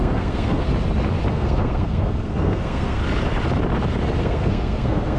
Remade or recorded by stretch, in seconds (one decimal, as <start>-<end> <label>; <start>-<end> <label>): 0.0-0.7 remade; 0.7-1.3 recorded; 1.3-3.0 remade; 3.0-4.2 recorded; 4.2-5.2 remade